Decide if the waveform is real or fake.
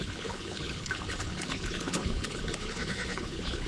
fake